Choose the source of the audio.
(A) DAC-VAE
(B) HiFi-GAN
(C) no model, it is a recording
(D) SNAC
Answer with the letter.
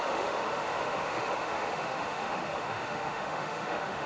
A